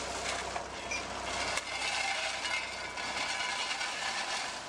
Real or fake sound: real